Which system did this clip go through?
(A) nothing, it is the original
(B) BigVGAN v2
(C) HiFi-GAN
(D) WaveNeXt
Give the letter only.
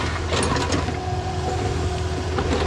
A